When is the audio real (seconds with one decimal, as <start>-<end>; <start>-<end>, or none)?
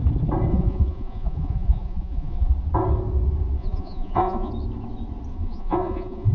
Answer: 0.0-0.5; 2.5-3.6; 4.5-5.3